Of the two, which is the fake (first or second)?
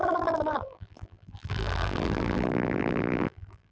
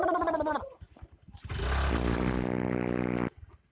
first